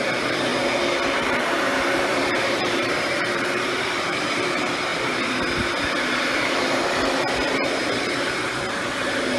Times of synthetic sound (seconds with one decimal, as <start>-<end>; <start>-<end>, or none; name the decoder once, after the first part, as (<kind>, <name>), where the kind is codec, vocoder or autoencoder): 0.0-0.5 (vocoder, BigVGAN v2); 1.2-4.9; 6.4-9.4